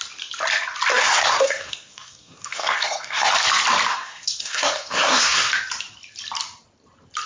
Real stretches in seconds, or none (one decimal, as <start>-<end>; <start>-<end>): 0.0-0.9; 3.3-3.9; 5.5-7.3